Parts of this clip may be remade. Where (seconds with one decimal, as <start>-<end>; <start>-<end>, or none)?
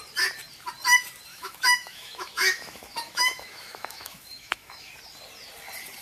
1.3-4.9